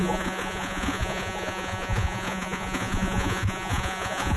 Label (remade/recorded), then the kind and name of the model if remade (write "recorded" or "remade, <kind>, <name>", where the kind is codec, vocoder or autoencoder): remade, vocoder, Vocos